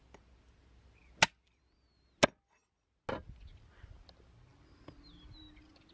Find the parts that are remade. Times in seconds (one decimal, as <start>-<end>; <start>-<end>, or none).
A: none